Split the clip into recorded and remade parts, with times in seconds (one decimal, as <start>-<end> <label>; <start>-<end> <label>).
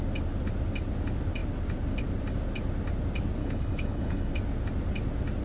0.0-3.4 recorded; 3.4-4.3 remade; 4.3-5.4 recorded